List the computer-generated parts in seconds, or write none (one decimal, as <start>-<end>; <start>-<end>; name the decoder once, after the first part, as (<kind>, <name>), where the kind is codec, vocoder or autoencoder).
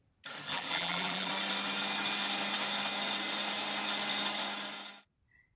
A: 0.5-1.3 (vocoder, BigVGAN v2)